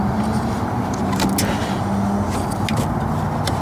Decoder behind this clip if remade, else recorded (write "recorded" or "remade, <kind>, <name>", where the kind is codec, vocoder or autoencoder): recorded